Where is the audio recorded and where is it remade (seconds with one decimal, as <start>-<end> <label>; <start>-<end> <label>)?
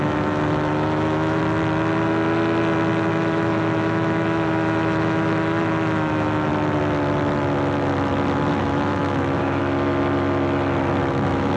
0.0-1.4 remade; 1.4-3.1 recorded; 3.1-6.5 remade; 6.5-8.5 recorded; 8.5-9.6 remade; 9.6-11.1 recorded; 11.1-11.6 remade